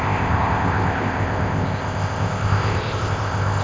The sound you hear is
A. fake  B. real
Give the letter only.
A